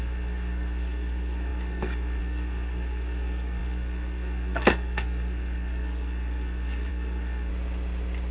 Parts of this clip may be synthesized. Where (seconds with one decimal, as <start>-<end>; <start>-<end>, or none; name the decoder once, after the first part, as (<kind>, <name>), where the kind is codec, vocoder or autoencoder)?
0.0-7.5 (codec, SNAC)